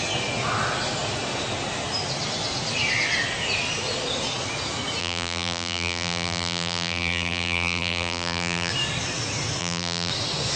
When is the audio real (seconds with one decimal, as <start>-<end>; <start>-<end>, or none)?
0.0-5.0; 8.7-9.6; 10.1-10.6